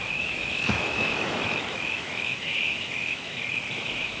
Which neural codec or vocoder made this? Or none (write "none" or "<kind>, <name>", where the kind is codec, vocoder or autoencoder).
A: autoencoder, DAC-VAE